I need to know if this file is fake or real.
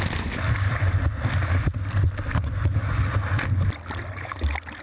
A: real